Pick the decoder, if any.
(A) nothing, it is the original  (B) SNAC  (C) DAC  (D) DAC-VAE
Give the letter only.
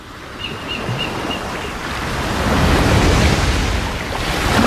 A